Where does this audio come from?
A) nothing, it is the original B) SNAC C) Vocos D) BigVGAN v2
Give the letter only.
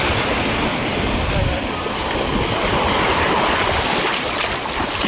A